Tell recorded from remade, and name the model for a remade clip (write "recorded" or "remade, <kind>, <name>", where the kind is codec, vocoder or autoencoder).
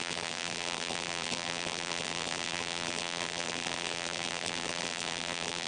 remade, vocoder, BigVGAN v2